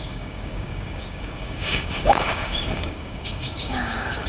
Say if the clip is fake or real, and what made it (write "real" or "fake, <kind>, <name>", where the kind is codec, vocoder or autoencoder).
fake, codec, DAC